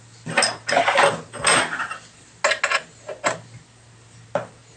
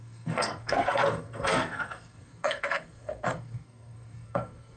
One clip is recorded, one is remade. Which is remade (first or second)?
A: second